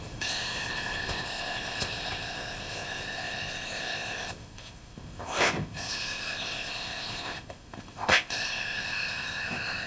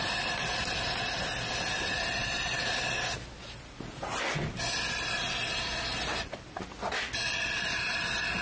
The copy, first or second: first